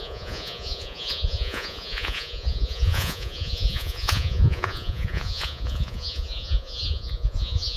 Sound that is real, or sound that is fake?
fake